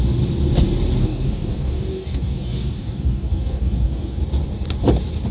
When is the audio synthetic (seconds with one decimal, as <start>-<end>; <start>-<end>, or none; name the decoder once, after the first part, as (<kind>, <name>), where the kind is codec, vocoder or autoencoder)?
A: 1.0-4.2 (codec, DAC)